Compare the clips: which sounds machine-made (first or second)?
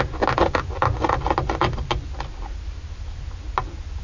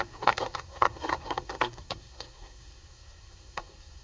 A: second